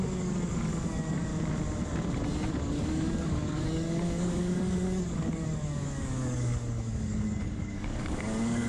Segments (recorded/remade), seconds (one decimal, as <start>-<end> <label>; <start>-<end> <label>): 0.0-1.3 remade; 1.3-2.5 recorded; 2.5-8.7 remade

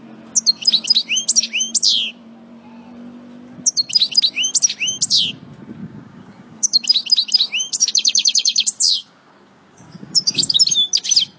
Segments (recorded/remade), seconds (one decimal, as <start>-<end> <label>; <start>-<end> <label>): 0.0-5.8 recorded; 5.8-6.8 remade; 6.8-7.7 recorded; 7.7-10.6 remade; 10.6-11.4 recorded